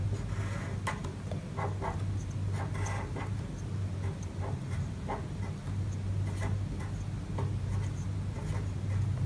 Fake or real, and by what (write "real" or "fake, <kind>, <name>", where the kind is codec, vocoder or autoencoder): real